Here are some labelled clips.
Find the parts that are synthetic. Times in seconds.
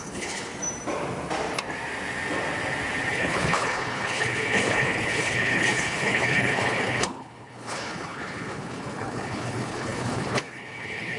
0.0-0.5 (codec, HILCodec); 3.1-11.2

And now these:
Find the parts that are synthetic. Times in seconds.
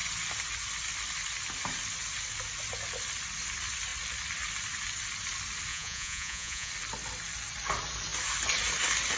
5.7-6.7 (vocoder, Vocos)